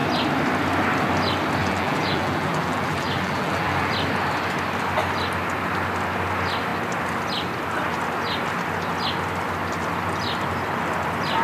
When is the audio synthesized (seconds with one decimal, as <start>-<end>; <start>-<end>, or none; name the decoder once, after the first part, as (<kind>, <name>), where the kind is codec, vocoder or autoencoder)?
1.6-3.9 (vocoder, BigVGAN v2)

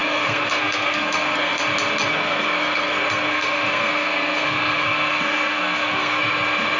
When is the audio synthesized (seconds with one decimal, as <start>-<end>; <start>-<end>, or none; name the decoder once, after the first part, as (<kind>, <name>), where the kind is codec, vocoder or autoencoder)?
0.0-1.6 (codec, SNAC); 2.1-6.2

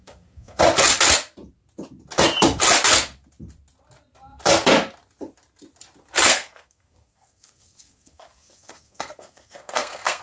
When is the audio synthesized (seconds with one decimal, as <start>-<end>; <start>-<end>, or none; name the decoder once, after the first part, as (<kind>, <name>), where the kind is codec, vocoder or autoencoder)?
0.0-0.6 (codec, SNAC); 6.3-10.2

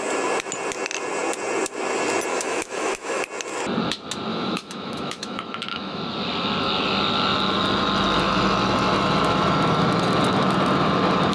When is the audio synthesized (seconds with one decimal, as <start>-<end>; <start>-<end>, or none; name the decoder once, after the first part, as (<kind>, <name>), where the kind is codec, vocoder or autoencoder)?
2.3-3.2 (autoencoder, DAC-VAE); 4.3-6.0

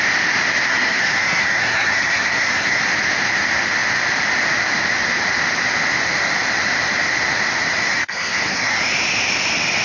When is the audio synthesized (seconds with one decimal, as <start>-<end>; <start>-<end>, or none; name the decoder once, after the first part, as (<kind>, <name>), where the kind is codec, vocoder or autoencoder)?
0.7-2.8 (codec, SNAC); 7.9-8.8

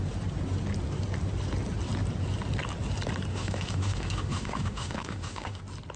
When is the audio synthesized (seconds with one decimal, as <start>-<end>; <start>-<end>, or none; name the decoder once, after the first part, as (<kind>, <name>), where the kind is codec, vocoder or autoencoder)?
3.3-5.6 (autoencoder, DAC-VAE)